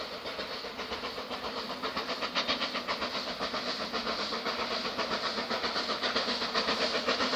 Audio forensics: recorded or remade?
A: recorded